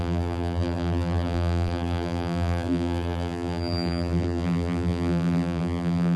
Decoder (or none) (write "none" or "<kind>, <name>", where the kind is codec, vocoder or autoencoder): vocoder, BigVGAN v2